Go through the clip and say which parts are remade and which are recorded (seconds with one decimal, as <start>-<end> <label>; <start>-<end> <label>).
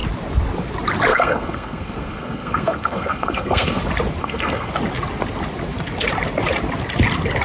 0.0-1.1 recorded; 1.1-3.8 remade; 3.8-4.2 recorded; 4.2-4.7 remade; 4.7-7.4 recorded